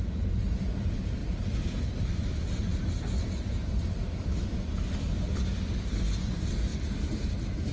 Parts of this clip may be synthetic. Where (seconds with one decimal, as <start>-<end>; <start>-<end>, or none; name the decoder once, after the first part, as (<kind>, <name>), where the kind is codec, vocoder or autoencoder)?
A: none